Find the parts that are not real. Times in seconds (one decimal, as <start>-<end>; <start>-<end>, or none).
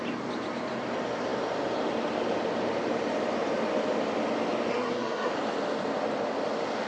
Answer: 4.7-5.3